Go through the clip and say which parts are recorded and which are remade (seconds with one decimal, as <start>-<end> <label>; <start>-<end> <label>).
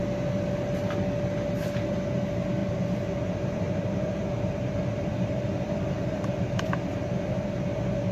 0.0-2.6 recorded; 2.6-6.6 remade; 6.6-8.1 recorded